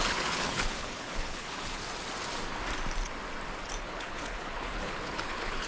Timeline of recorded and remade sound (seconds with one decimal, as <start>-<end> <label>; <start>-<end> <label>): 0.0-1.8 remade; 1.8-3.8 recorded; 3.8-5.7 remade